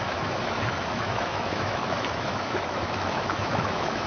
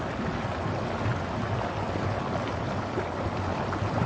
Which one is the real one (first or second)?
second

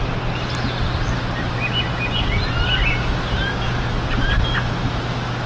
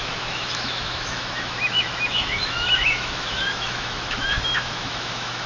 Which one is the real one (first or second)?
first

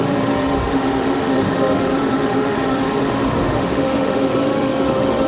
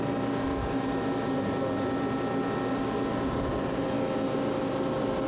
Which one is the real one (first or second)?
second